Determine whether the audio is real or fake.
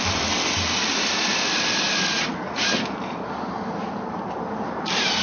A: real